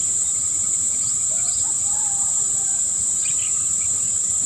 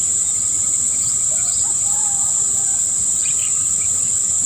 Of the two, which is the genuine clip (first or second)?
second